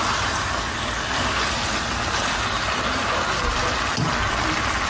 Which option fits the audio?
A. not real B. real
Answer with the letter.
B